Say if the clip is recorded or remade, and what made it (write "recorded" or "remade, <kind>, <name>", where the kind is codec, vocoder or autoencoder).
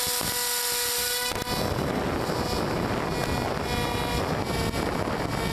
recorded